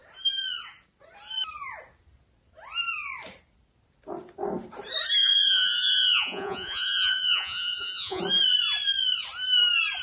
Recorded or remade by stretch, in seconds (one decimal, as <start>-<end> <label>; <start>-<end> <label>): 0.0-5.2 recorded; 5.2-8.2 remade; 8.2-10.0 recorded